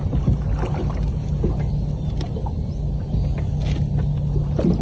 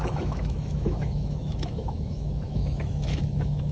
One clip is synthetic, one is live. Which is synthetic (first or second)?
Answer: second